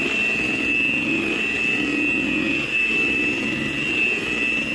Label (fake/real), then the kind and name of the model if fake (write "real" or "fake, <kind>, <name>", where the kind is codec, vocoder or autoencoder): real